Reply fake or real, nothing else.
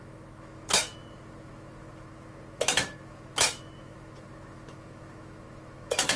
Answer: fake